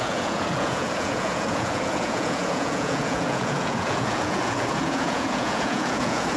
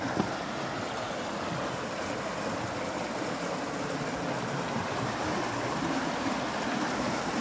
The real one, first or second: second